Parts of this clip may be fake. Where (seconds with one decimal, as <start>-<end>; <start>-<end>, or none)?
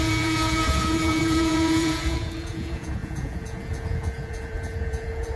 0.0-5.4